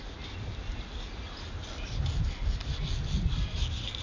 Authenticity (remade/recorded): recorded